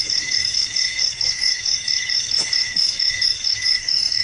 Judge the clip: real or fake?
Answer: fake